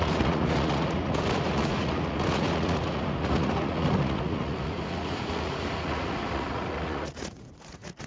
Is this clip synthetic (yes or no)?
yes